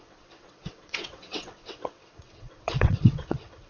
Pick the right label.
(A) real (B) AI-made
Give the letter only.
B